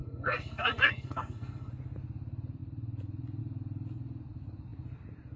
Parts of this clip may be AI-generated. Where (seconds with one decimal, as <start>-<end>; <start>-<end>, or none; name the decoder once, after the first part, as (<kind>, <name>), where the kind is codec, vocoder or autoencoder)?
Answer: 0.0-1.7 (codec, SNAC)